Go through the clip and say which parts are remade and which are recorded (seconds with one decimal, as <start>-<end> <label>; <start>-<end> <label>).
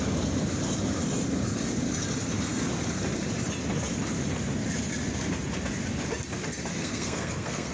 0.0-6.7 recorded; 6.7-7.7 remade